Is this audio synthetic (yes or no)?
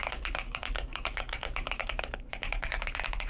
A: yes